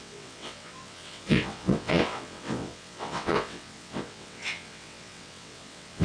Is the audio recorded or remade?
remade